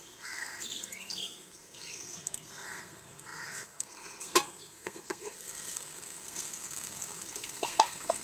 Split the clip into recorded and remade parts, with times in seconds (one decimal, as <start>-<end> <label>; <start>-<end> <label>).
0.0-8.2 remade